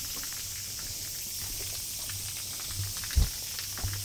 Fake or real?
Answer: real